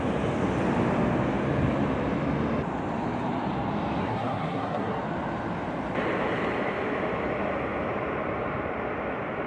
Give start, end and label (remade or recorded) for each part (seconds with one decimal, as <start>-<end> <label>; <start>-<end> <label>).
0.0-4.0 recorded; 4.0-5.0 remade; 5.0-9.5 recorded